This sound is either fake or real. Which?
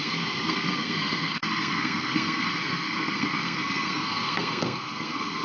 fake